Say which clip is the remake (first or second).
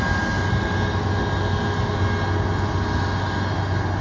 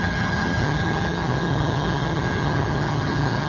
second